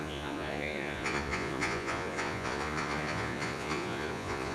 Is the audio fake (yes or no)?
yes